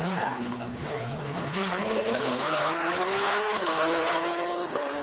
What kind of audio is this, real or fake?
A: fake